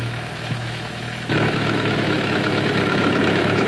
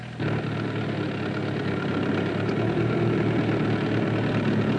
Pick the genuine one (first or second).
second